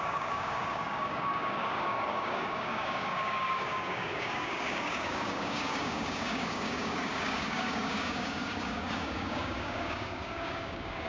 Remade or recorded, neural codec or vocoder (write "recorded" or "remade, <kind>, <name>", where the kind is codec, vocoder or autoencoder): remade, codec, DAC